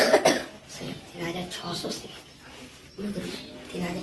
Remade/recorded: recorded